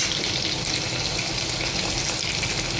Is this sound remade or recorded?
recorded